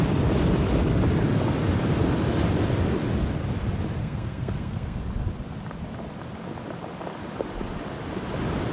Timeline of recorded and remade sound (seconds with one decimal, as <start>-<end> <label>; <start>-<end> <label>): 0.0-4.0 recorded; 4.0-5.0 remade; 5.0-8.7 recorded

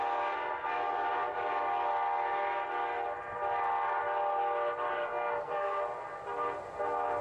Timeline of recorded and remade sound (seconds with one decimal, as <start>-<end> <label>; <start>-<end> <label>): 0.0-4.9 recorded; 4.9-5.8 remade; 5.8-7.2 recorded

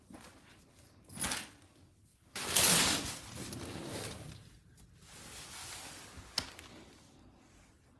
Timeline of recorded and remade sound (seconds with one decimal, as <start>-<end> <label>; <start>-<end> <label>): 0.0-8.0 recorded